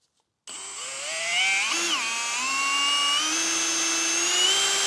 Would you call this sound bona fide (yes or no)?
yes